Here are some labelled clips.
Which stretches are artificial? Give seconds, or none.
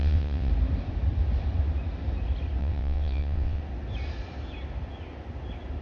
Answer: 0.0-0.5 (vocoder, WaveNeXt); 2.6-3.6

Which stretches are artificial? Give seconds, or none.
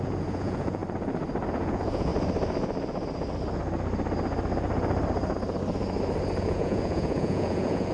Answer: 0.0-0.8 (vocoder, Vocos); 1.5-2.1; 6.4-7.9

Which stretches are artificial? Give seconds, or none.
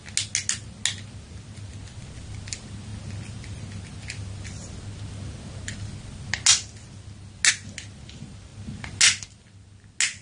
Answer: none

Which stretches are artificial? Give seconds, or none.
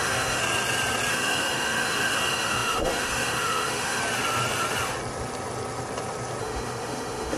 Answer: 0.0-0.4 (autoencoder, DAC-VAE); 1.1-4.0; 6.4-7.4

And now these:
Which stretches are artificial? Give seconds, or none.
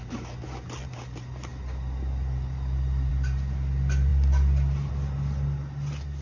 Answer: none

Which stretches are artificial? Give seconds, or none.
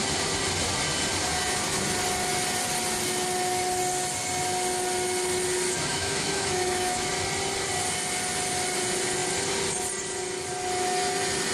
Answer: 5.9-7.1 (autoencoder, DAC-VAE)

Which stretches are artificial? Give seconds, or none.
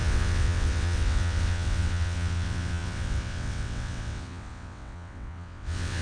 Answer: 0.0-6.0 (vocoder, WaveNeXt)